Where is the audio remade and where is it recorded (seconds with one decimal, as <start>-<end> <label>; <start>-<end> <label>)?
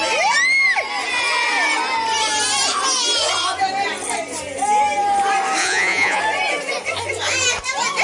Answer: 0.0-5.6 recorded; 5.6-6.2 remade; 6.2-8.0 recorded